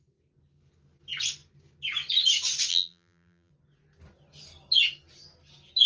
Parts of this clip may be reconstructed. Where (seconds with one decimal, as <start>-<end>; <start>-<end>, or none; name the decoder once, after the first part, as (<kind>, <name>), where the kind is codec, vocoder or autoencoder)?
2.7-3.5 (vocoder, BigVGAN v2)